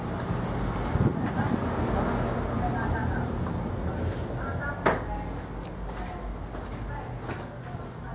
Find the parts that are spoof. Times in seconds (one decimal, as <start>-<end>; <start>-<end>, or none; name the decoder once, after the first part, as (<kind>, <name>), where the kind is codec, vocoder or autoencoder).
none